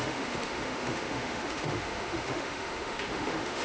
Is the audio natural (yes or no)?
no